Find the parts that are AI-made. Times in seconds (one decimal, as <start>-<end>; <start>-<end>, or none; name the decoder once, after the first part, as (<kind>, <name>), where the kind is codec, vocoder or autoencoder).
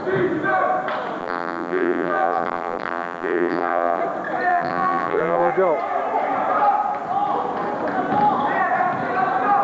1.2-4.0 (vocoder, BigVGAN v2); 4.5-5.5